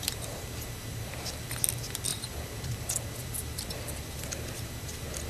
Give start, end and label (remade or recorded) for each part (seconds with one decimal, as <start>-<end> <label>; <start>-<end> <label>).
0.0-2.1 recorded; 2.1-4.4 remade; 4.4-5.3 recorded